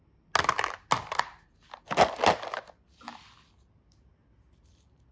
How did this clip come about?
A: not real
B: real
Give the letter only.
B